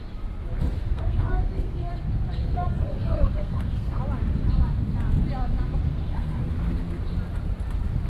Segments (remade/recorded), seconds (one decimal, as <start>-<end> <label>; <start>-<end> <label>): 0.0-0.8 recorded; 0.8-1.9 remade; 1.9-2.4 recorded; 2.4-4.0 remade; 4.0-5.9 recorded; 5.9-6.5 remade; 6.5-8.1 recorded